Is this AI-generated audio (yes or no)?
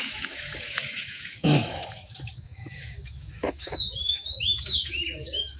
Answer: yes